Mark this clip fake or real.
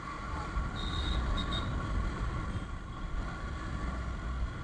real